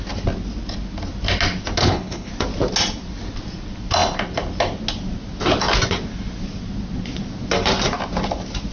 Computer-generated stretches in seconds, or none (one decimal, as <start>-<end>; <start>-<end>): 1.8-2.3